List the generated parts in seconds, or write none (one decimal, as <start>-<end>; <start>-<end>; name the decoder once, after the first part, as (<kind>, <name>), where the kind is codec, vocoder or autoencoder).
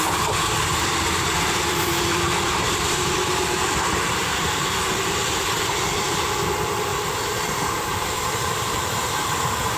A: 0.0-9.8 (vocoder, BigVGAN v2)